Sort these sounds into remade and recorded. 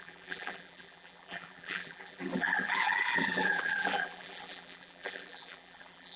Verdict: remade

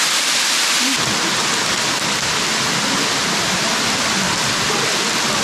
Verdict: remade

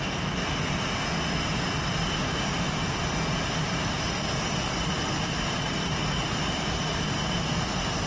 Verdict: recorded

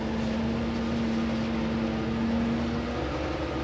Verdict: recorded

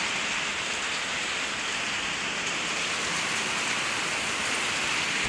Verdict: recorded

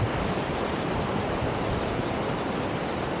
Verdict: remade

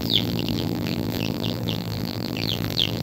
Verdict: remade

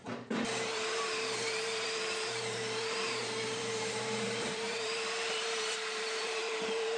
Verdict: remade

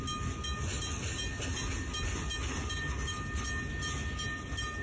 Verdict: recorded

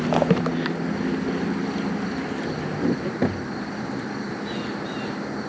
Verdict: recorded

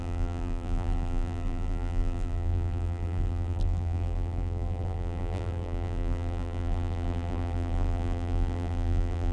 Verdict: remade